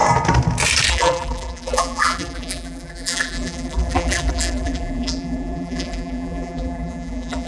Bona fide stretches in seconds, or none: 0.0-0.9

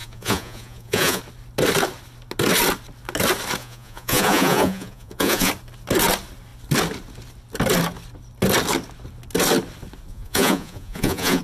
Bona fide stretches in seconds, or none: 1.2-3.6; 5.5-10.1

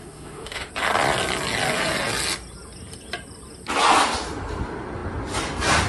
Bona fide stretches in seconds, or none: 0.7-5.9

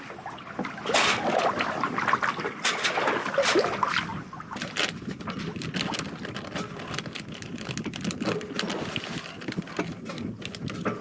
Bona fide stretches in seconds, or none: 0.0-11.0

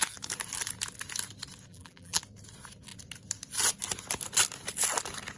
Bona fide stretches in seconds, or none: 0.0-1.7; 2.2-5.4

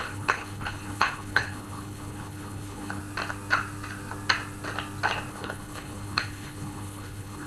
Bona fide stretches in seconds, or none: 3.0-5.3